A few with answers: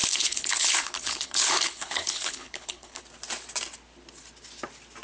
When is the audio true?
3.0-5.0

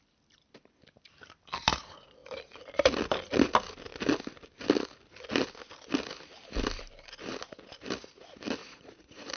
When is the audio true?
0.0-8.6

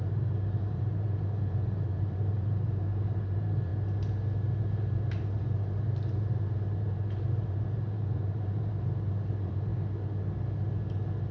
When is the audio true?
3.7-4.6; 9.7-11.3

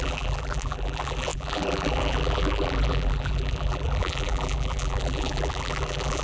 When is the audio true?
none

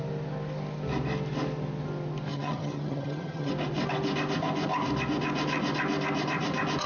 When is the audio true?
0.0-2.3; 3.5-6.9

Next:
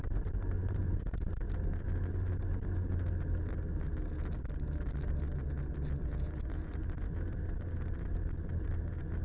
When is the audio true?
0.0-0.6; 1.3-6.0; 6.7-9.2